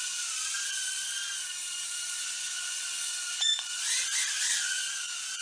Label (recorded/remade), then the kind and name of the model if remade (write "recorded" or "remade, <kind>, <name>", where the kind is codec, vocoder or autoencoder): remade, vocoder, Vocos